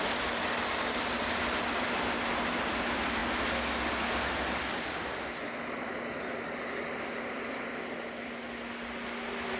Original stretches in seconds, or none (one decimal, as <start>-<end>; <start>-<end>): 0.0-9.6